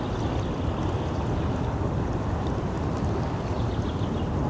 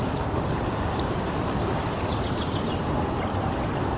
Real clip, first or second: first